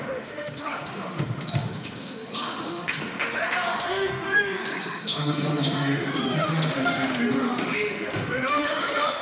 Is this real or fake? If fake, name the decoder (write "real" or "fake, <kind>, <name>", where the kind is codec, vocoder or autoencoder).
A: fake, autoencoder, DAC-VAE